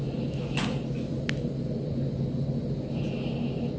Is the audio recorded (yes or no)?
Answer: yes